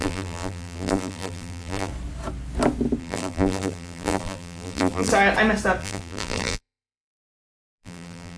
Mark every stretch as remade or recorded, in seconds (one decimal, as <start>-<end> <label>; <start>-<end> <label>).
0.0-1.9 remade; 1.9-3.0 recorded; 3.0-5.1 remade; 5.1-5.8 recorded; 5.8-8.4 remade